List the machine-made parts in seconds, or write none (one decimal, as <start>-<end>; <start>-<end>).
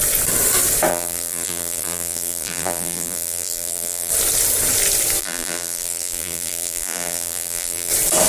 0.9-4.1; 5.2-7.9